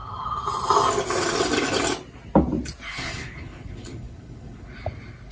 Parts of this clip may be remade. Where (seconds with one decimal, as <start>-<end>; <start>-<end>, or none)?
2.9-4.7